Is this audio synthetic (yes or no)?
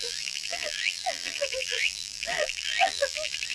yes